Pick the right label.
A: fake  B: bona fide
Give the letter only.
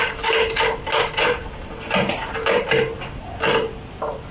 B